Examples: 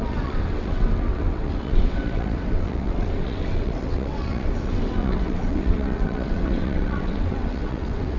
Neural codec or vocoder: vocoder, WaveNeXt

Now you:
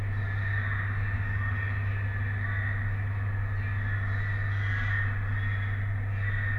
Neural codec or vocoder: none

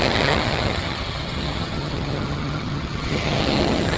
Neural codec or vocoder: vocoder, HiFi-GAN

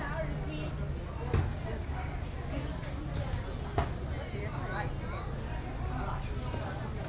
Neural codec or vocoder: none